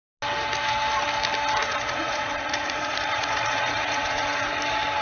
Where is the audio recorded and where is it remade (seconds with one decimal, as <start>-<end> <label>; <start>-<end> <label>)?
0.0-1.6 recorded; 1.6-4.6 remade; 4.6-5.0 recorded